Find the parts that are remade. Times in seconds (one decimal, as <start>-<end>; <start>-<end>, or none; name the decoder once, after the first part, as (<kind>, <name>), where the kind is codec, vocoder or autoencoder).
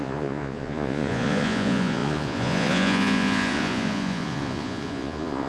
0.0-5.5 (vocoder, Vocos)